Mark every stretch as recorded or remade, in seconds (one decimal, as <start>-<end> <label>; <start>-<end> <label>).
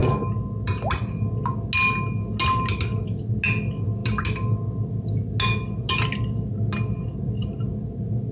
0.0-8.3 recorded